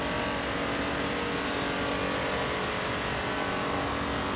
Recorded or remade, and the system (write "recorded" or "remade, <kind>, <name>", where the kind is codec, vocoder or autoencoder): recorded